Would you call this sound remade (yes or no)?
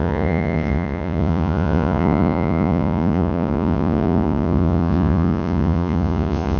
yes